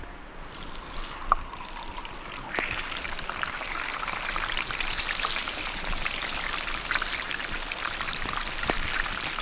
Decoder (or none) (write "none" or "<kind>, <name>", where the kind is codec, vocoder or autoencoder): none